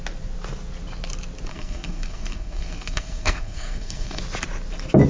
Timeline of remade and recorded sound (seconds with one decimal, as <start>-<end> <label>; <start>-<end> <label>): 0.0-1.5 recorded; 1.5-4.2 remade; 4.2-5.1 recorded